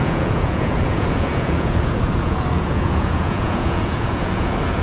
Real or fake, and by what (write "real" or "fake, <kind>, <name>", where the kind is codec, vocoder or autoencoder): fake, vocoder, Vocos